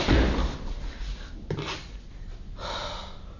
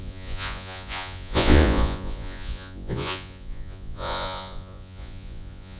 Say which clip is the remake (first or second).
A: second